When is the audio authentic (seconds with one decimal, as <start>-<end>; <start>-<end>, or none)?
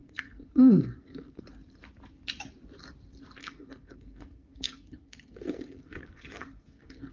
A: 1.4-3.4